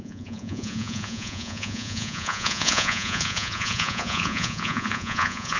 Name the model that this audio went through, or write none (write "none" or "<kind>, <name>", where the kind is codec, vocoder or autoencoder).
vocoder, Vocos